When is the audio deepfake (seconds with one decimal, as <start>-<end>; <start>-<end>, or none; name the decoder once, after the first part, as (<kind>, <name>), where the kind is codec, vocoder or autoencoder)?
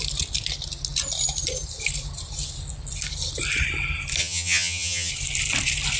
4.2-5.1 (vocoder, HiFi-GAN)